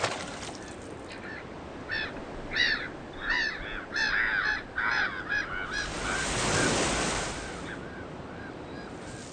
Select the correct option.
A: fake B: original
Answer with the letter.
B